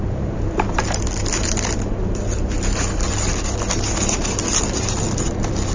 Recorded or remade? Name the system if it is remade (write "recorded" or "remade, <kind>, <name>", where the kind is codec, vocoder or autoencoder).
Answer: recorded